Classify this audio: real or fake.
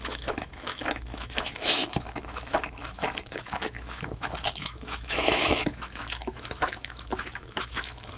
fake